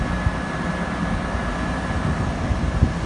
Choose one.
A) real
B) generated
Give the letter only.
A